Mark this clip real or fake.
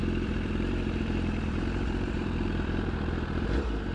fake